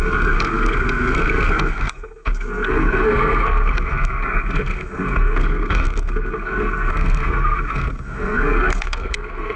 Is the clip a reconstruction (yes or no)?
yes